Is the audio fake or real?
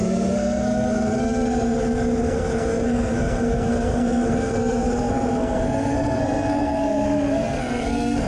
fake